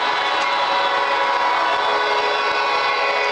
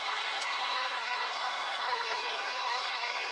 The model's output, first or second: second